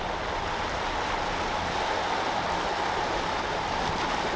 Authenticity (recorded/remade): recorded